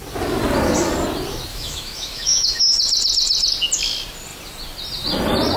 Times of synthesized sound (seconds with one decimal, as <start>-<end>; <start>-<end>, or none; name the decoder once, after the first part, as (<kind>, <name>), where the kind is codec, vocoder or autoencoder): 1.5-2.6 (autoencoder, DAC-VAE)